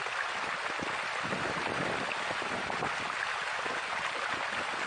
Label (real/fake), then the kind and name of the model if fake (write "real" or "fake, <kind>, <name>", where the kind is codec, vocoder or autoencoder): real